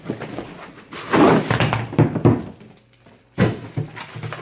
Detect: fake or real real